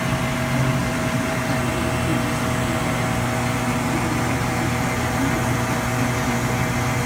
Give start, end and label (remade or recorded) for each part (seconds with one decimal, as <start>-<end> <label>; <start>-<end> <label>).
0.0-0.8 recorded; 0.8-1.4 remade; 1.4-7.1 recorded